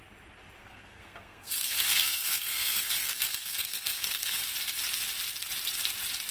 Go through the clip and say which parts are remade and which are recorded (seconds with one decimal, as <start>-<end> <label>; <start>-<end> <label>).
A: 0.0-0.6 recorded; 0.6-4.4 remade; 4.4-6.3 recorded